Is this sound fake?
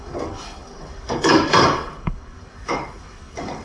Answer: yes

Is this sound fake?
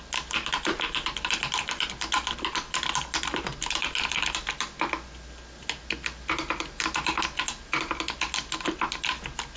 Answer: no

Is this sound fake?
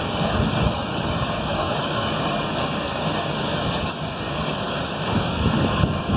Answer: yes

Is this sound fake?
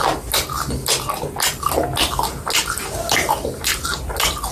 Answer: no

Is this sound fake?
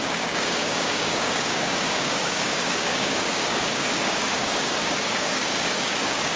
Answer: yes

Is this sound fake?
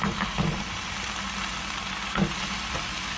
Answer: no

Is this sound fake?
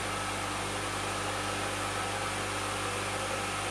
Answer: no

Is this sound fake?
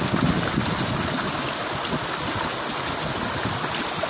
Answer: no